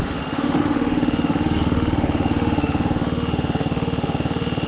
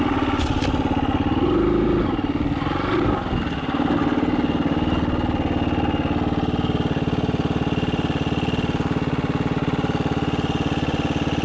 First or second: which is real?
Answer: second